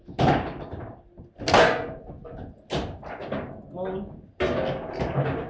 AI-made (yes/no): no